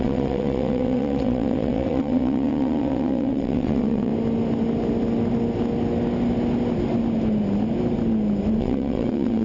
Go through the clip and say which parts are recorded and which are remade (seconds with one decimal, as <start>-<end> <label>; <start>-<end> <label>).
0.0-4.1 remade; 4.1-8.6 recorded; 8.6-9.4 remade